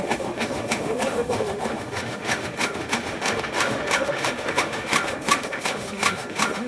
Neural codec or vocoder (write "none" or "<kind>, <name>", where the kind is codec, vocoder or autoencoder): autoencoder, DAC-VAE